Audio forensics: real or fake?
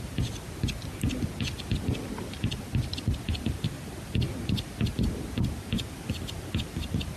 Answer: real